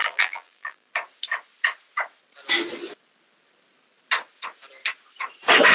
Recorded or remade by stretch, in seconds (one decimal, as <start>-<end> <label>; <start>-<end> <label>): 0.0-0.9 remade; 0.9-5.7 recorded